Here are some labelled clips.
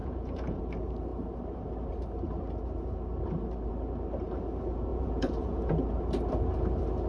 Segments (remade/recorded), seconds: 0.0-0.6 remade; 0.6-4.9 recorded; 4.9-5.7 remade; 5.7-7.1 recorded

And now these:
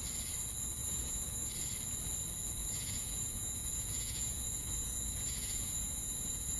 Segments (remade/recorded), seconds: 0.0-0.8 recorded; 0.8-1.5 remade; 1.5-2.6 recorded; 2.6-6.6 remade

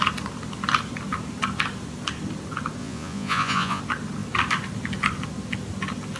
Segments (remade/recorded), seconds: 0.0-2.8 recorded; 2.8-3.8 remade; 3.8-6.2 recorded

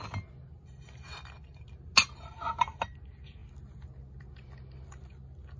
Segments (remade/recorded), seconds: 0.0-5.6 recorded

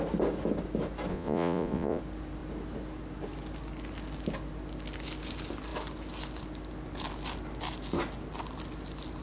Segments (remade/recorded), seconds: 0.0-1.1 recorded; 1.1-2.0 remade; 2.0-9.2 recorded

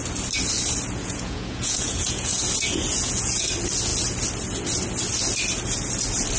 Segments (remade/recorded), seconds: 0.0-1.0 recorded; 1.0-2.4 remade; 2.4-2.9 recorded; 2.9-3.5 remade; 3.5-6.4 recorded

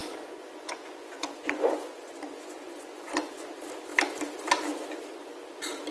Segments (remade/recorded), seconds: 0.0-3.5 remade; 3.5-5.9 recorded

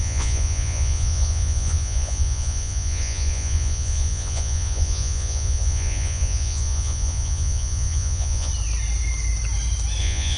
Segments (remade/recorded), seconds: 0.0-8.5 remade; 8.5-10.0 recorded; 10.0-10.4 remade